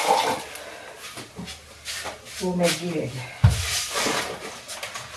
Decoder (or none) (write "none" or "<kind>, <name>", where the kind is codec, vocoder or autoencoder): none